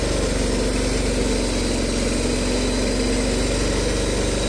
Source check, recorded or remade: recorded